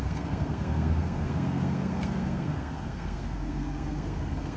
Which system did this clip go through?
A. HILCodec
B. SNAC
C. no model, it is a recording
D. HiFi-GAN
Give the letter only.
B